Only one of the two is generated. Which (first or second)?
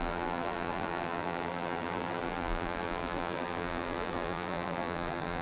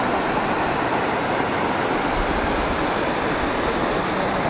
first